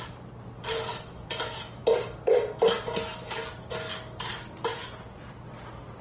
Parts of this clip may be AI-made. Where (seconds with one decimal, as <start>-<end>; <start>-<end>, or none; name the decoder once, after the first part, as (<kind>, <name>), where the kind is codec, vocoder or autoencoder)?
none

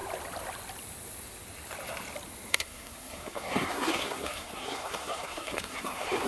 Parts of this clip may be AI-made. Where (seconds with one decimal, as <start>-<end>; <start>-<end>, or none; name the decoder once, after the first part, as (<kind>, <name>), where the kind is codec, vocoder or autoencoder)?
2.5-6.3 (codec, SNAC)

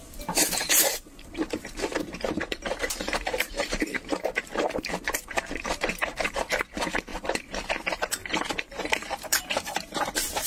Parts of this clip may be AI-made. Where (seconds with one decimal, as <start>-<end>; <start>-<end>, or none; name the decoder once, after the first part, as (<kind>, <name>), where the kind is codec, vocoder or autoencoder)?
0.0-10.5 (vocoder, BigVGAN v2)